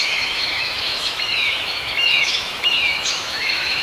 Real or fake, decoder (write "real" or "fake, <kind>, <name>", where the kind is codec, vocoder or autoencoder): fake, autoencoder, DAC-VAE